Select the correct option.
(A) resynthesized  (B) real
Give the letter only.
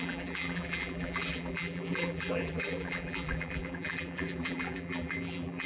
A